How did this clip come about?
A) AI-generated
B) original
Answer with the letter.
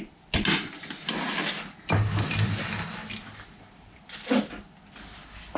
B